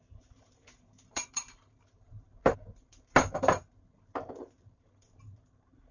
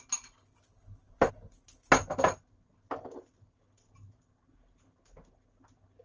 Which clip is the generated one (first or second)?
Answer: first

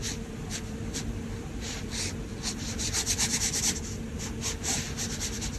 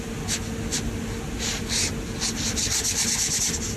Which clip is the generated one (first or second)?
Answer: first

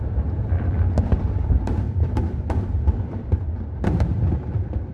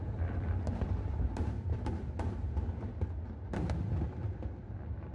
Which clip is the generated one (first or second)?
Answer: first